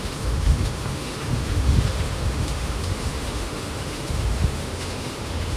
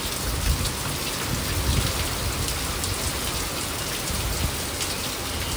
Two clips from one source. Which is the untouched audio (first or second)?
second